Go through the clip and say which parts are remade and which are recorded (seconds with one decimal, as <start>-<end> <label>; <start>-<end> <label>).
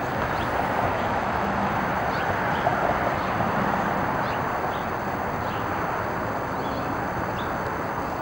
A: 0.0-0.9 recorded; 0.9-1.7 remade; 1.7-8.2 recorded